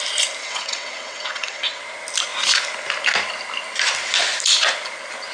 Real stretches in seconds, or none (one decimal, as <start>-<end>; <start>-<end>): 0.0-0.4; 1.8-5.3